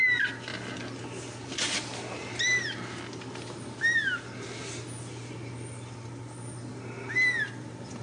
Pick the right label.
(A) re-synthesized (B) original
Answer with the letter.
B